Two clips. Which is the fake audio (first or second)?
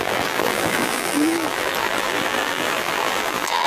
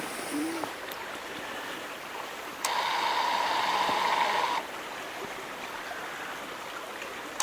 first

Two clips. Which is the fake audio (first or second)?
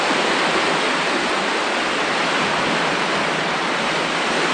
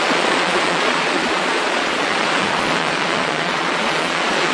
second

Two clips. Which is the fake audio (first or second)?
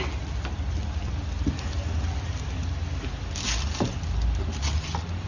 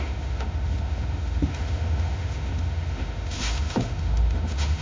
second